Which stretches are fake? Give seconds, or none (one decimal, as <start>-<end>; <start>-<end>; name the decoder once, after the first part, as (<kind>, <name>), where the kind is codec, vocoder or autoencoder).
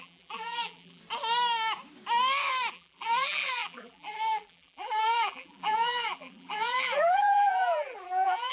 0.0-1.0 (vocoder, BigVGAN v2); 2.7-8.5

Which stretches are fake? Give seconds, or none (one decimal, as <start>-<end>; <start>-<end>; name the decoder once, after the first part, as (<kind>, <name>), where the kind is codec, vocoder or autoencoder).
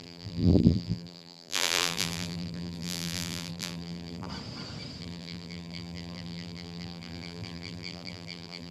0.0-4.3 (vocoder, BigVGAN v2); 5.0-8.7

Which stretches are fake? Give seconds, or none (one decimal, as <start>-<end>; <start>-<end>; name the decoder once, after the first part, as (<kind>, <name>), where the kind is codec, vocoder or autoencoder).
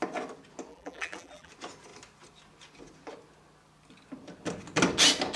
0.7-1.5 (vocoder, BigVGAN v2)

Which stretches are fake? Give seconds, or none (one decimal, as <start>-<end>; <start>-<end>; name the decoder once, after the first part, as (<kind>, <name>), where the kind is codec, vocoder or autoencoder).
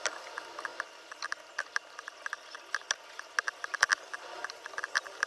none